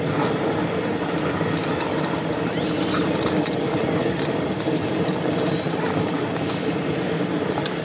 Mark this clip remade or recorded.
recorded